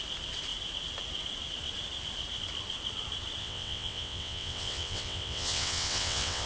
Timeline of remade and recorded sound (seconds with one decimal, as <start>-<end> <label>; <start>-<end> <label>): 0.0-3.4 recorded; 3.4-6.5 remade